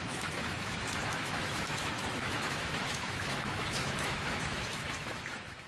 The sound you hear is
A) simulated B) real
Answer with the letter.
A